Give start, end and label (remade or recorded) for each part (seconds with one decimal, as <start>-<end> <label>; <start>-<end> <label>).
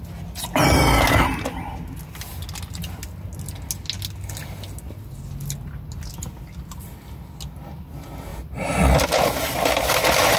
0.0-10.4 recorded